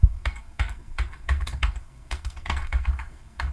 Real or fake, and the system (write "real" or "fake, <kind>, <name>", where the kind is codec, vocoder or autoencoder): fake, codec, SNAC